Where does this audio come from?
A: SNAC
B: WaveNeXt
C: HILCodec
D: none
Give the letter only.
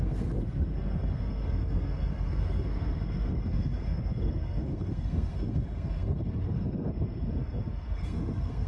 A